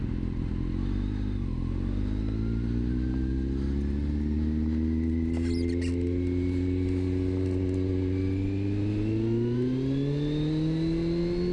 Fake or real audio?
real